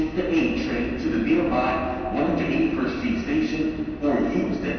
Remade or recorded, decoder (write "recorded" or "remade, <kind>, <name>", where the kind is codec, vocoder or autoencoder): recorded